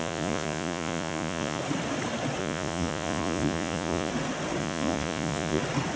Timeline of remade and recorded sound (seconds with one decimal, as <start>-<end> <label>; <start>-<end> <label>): 0.0-1.6 remade; 1.6-2.4 recorded; 2.4-4.1 remade; 4.1-4.6 recorded; 4.6-5.6 remade; 5.6-6.0 recorded

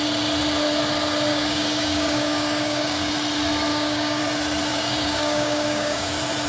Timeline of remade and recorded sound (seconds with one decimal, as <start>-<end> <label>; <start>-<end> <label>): 0.0-1.3 recorded; 1.3-3.1 remade; 3.1-3.7 recorded; 3.7-4.2 remade; 4.2-4.7 recorded; 4.7-6.1 remade; 6.1-6.5 recorded

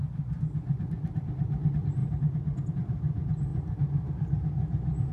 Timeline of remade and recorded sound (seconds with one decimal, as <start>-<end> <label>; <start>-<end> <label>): 0.0-5.1 recorded